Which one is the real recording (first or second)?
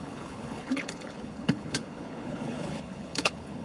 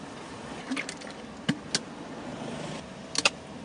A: second